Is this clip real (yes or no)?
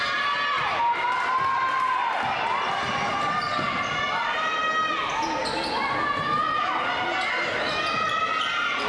yes